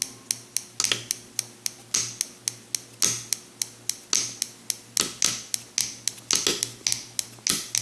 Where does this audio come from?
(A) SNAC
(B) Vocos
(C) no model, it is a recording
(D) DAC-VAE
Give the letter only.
C